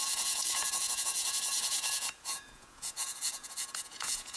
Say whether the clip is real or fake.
fake